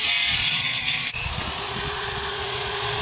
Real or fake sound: fake